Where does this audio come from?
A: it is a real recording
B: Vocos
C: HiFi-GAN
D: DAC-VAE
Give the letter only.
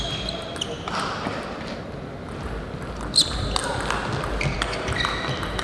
A